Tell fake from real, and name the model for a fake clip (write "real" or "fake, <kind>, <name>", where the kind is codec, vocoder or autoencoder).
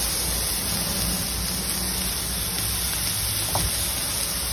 real